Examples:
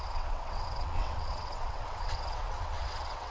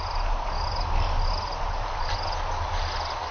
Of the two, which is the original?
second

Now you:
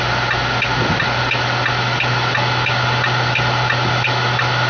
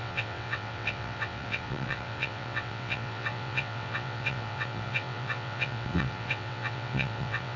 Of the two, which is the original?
first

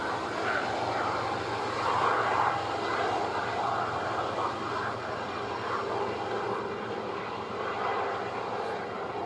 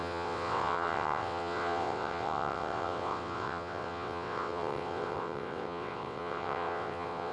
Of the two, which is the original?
first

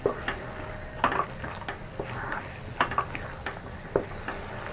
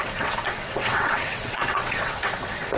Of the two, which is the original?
first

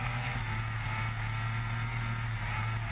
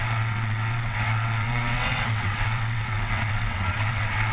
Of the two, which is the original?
first